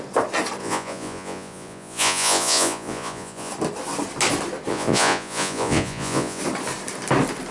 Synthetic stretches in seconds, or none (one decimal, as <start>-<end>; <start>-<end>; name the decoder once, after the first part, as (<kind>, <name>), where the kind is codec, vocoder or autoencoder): 0.6-3.5 (vocoder, Vocos); 4.7-6.4